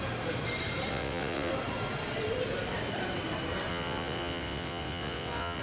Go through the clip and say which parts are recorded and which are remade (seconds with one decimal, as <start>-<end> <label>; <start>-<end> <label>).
0.0-0.9 recorded; 0.9-1.5 remade; 1.5-3.7 recorded; 3.7-5.6 remade